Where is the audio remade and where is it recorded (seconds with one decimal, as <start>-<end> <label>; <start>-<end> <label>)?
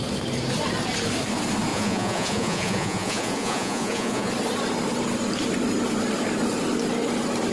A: 0.0-1.7 recorded; 1.7-4.3 remade; 4.3-7.5 recorded